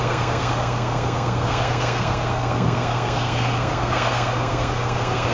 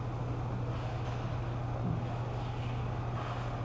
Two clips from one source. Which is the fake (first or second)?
first